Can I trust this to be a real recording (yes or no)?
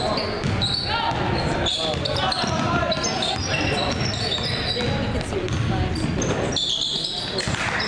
yes